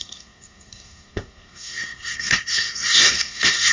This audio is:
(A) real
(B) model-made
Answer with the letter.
B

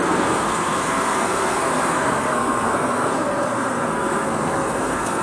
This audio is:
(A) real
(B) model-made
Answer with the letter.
B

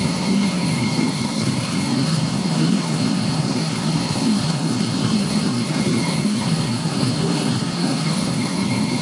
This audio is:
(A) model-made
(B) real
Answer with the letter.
A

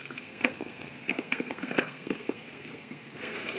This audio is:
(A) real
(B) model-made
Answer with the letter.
B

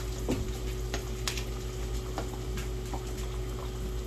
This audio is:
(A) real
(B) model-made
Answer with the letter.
A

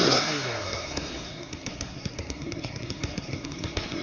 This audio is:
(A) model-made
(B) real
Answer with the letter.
A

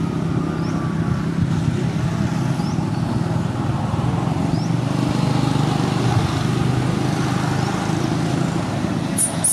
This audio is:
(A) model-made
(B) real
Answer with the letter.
B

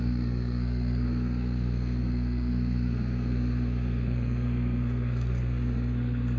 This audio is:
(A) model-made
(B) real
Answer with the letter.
A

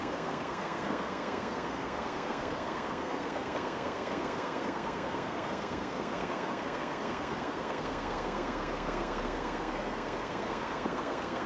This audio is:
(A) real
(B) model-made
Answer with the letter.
B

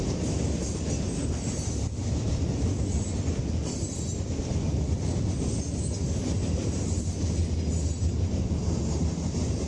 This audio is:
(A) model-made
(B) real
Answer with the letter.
B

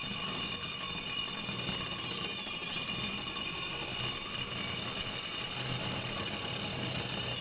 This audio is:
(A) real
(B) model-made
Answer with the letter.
A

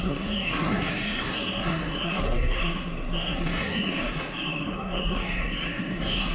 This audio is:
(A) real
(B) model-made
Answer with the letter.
B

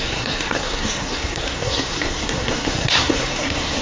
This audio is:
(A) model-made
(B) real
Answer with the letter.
A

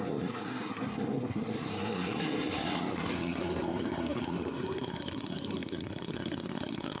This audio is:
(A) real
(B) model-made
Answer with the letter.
B